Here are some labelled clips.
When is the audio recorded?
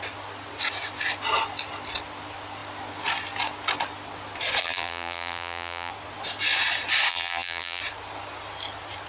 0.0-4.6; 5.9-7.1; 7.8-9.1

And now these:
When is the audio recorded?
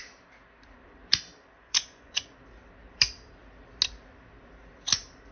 0.0-1.6; 2.3-5.3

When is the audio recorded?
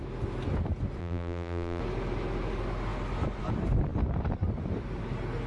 0.0-1.0; 1.8-5.5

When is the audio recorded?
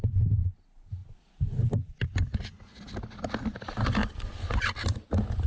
0.0-4.0; 4.6-5.5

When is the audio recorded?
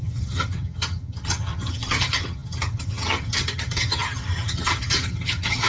none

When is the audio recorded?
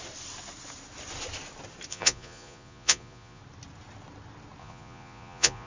0.0-1.9; 3.4-4.6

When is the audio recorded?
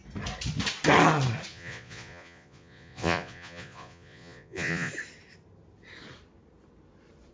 0.0-1.5; 4.9-7.3